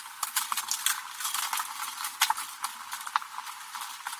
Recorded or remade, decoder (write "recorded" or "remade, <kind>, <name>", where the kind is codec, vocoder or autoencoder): recorded